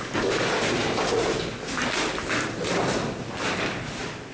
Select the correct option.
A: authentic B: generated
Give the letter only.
A